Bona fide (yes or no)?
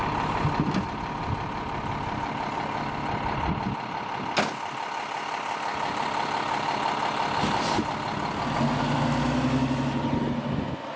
yes